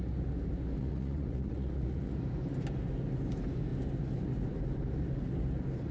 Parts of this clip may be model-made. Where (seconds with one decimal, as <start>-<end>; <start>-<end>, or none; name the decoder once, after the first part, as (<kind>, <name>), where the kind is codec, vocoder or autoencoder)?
0.8-2.1 (vocoder, Vocos)